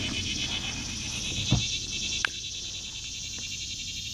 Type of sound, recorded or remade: recorded